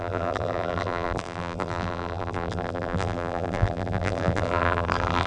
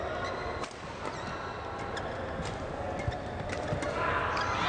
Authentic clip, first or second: second